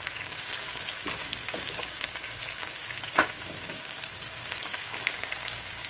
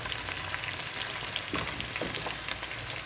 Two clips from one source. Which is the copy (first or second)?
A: first